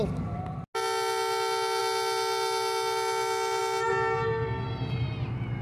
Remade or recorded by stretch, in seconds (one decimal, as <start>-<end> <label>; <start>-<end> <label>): 0.0-5.6 recorded